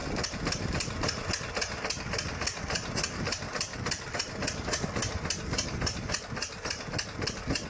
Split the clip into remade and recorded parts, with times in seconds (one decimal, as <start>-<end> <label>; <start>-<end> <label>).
0.0-7.7 recorded